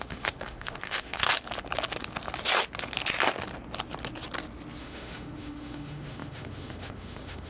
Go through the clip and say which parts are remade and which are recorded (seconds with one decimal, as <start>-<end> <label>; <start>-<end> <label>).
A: 0.0-1.3 remade; 1.3-4.8 recorded; 4.8-7.5 remade